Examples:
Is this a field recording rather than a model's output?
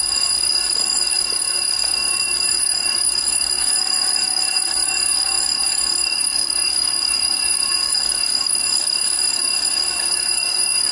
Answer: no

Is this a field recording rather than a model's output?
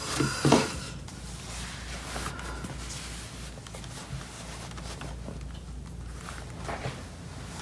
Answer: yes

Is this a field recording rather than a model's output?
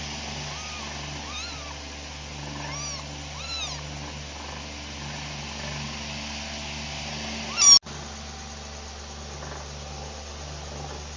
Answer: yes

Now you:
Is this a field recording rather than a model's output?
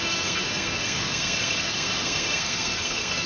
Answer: no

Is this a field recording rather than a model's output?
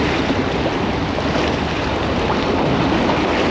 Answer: yes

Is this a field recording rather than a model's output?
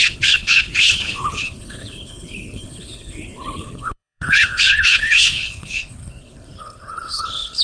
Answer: no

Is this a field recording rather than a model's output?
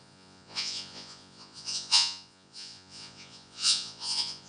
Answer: no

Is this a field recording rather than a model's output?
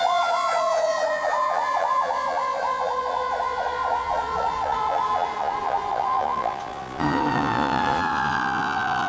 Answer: no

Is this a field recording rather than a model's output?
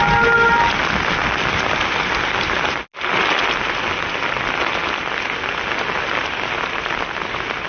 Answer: yes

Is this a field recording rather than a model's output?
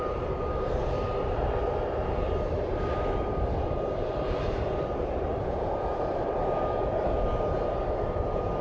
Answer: no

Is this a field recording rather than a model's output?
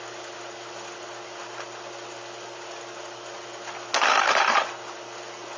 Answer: yes